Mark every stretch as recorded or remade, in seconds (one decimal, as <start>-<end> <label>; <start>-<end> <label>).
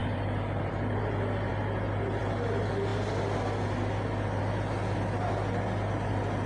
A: 0.0-1.0 remade; 1.0-6.5 recorded